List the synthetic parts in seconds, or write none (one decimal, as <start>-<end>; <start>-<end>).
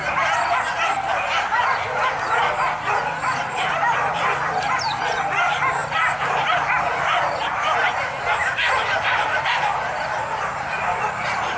1.5-2.1; 3.2-4.1; 8.4-10.4